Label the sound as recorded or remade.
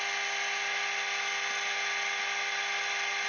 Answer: recorded